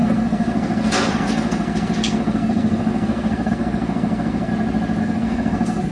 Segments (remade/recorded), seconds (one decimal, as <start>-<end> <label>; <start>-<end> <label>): 0.0-4.5 remade; 4.5-5.0 recorded; 5.0-5.9 remade